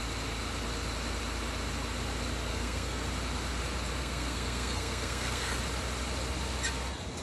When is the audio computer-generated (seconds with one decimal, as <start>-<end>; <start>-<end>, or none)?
2.5-3.1; 4.0-5.6